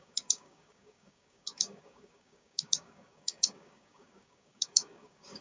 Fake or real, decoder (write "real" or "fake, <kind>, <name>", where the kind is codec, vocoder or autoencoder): fake, codec, DAC